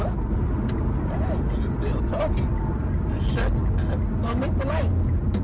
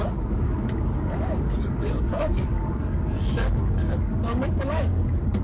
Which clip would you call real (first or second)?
first